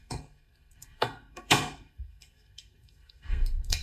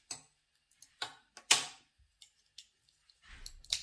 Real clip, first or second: second